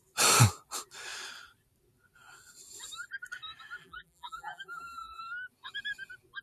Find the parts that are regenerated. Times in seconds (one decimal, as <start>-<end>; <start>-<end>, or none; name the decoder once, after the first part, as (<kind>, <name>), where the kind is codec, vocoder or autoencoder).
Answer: 3.8-5.2 (vocoder, BigVGAN v2)